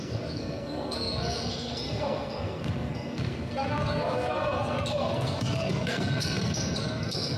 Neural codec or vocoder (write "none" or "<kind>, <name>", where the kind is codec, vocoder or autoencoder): codec, SNAC